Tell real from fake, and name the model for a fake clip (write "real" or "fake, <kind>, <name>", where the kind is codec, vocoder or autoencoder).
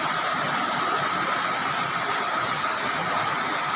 real